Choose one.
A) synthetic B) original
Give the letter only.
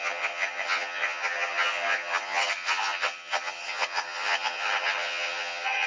A